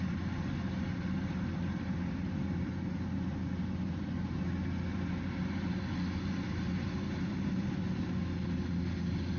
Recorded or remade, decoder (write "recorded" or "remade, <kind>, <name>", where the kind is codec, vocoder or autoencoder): recorded